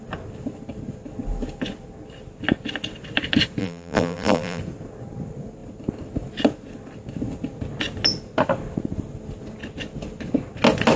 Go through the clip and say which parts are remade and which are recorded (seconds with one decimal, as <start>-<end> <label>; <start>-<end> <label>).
0.0-3.6 recorded; 3.6-4.6 remade; 4.6-11.0 recorded